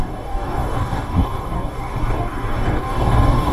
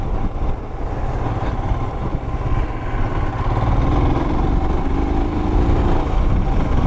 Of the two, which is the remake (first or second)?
first